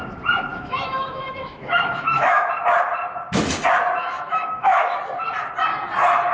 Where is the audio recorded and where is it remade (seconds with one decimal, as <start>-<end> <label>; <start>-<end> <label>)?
0.0-0.5 recorded; 0.5-2.5 remade; 2.5-4.0 recorded; 4.0-5.0 remade; 5.0-6.3 recorded